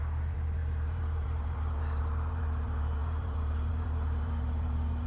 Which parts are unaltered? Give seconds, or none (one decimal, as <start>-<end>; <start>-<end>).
none